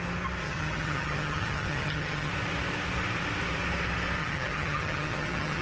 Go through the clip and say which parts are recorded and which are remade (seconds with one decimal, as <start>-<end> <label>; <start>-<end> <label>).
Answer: 0.0-0.4 recorded; 0.4-2.3 remade; 2.3-4.2 recorded; 4.2-5.6 remade

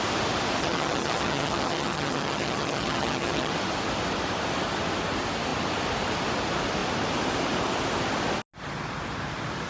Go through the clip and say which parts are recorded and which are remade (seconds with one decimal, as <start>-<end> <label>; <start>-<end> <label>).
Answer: 0.0-0.6 recorded; 0.6-3.5 remade; 3.5-9.7 recorded